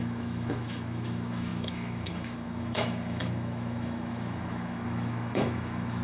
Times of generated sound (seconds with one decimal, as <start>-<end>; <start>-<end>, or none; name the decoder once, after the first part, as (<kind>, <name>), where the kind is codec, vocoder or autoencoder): 0.0-6.0 (autoencoder, DAC-VAE)